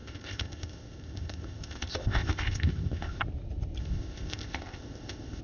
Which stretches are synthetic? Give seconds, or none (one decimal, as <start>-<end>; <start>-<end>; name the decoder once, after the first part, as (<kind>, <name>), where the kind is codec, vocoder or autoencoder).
0.0-3.2 (codec, ZipCodec); 3.8-5.4